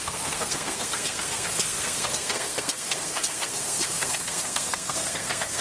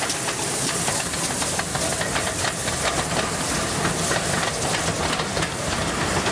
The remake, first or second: first